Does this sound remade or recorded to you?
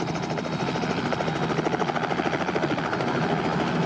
recorded